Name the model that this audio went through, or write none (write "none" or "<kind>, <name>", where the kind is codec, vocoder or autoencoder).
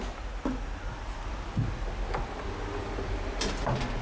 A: none